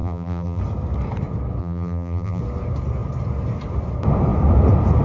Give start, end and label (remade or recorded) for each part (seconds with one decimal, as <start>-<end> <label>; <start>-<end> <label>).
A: 0.0-0.6 remade; 0.6-1.6 recorded; 1.6-2.4 remade; 2.4-5.0 recorded

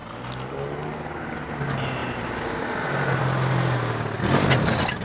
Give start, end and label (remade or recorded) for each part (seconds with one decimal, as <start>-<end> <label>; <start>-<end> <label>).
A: 0.0-2.0 recorded; 2.0-3.2 remade; 3.2-5.0 recorded

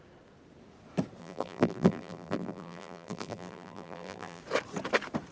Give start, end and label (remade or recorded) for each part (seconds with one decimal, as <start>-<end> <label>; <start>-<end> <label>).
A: 0.0-1.2 recorded; 1.2-4.4 remade; 4.4-5.3 recorded

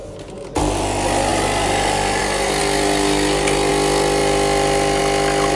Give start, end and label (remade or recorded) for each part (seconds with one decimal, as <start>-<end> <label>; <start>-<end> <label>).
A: 0.0-1.3 recorded; 1.3-2.2 remade; 2.2-4.2 recorded; 4.2-5.0 remade; 5.0-5.5 recorded

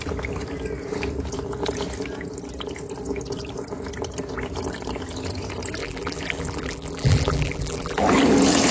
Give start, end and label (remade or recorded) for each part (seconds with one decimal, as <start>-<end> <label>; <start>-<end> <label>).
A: 0.0-5.8 recorded; 5.8-8.0 remade; 8.0-8.7 recorded

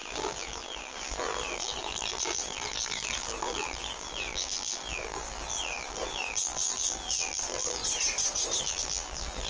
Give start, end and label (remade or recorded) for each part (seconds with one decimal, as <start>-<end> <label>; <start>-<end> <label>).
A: 0.0-7.8 remade; 7.8-8.6 recorded; 8.6-9.5 remade

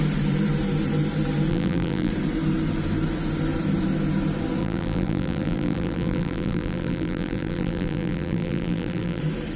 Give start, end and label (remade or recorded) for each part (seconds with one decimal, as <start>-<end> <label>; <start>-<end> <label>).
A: 0.0-1.5 recorded; 1.5-2.1 remade; 2.1-4.6 recorded; 4.6-9.2 remade; 9.2-9.6 recorded

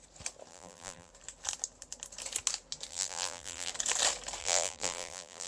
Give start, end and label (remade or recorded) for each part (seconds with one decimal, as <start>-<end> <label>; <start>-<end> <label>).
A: 0.0-0.5 recorded; 0.5-1.1 remade; 1.1-2.9 recorded; 2.9-3.7 remade; 3.7-4.4 recorded; 4.4-5.5 remade